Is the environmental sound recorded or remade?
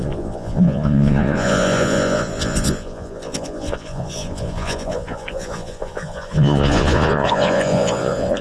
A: remade